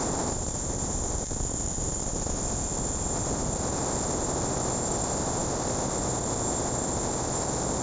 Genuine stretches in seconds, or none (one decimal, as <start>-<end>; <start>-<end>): 0.0-7.8